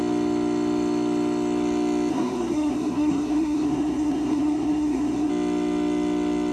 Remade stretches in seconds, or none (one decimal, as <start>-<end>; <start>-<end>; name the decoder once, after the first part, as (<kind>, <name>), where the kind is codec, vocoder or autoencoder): 2.1-5.3 (codec, SNAC)